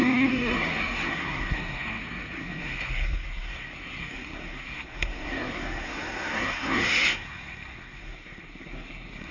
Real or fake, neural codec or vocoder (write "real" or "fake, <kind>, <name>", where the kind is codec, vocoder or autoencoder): fake, codec, SNAC